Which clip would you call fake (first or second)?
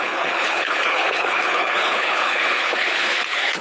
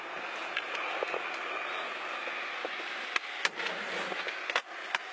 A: first